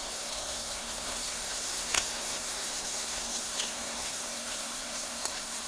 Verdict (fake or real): fake